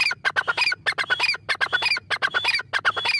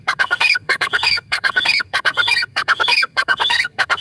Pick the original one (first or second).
first